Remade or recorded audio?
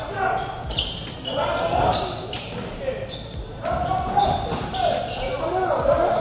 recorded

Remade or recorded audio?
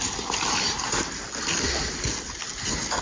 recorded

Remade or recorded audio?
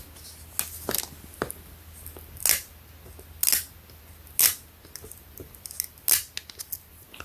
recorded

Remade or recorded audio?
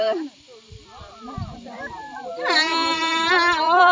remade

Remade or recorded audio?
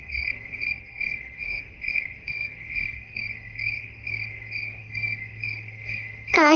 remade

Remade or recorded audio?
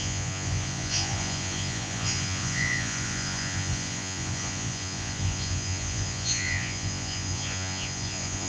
remade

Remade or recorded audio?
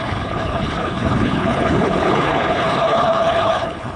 remade